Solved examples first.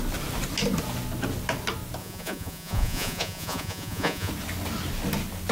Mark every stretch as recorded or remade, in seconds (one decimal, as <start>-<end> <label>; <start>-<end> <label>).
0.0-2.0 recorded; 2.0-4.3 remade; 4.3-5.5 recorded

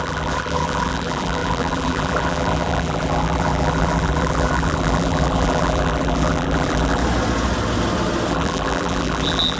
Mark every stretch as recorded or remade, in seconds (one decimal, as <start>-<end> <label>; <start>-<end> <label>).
0.0-7.0 remade; 7.0-8.3 recorded; 8.3-9.6 remade

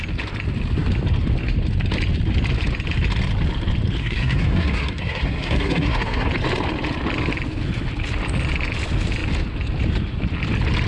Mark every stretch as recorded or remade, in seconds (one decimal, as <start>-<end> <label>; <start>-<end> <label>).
0.0-4.0 recorded; 4.0-6.3 remade; 6.3-10.9 recorded

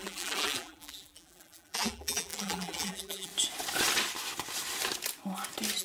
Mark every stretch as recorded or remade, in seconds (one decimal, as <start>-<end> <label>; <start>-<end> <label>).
0.0-3.3 remade; 3.3-5.8 recorded

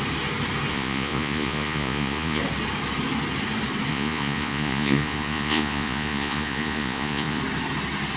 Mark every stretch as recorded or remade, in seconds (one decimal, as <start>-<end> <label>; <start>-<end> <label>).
0.0-0.7 recorded; 0.7-2.4 remade; 2.4-3.9 recorded; 3.9-7.4 remade; 7.4-8.2 recorded

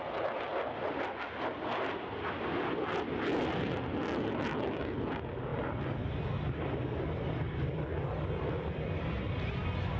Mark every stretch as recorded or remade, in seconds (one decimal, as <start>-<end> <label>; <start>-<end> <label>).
0.0-10.0 recorded

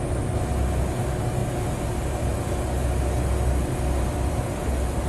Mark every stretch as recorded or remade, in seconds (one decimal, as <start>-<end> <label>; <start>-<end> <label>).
0.0-5.1 recorded